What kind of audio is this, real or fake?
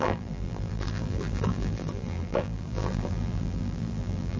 fake